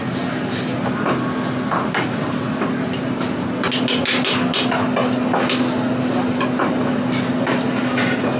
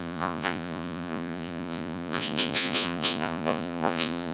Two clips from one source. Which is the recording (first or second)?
first